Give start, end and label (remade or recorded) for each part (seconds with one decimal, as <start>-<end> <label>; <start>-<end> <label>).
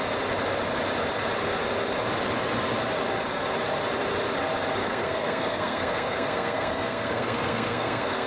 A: 0.0-4.8 recorded; 4.8-8.3 remade